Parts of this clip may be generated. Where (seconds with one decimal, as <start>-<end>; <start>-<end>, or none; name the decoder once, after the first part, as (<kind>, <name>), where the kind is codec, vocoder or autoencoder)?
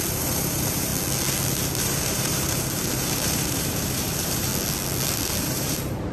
0.0-0.9 (vocoder, BigVGAN v2); 1.8-4.5; 5.4-6.1